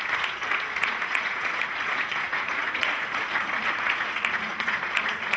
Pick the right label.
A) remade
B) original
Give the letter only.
A